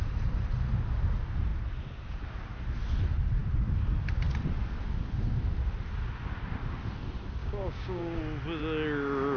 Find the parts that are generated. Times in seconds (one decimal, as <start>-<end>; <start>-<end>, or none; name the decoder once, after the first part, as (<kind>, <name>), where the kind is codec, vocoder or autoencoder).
7.4-8.2 (codec, DAC)